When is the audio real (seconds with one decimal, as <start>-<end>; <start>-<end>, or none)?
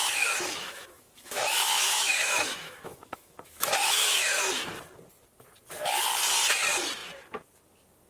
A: 4.6-8.1